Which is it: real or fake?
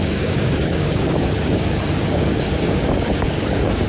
fake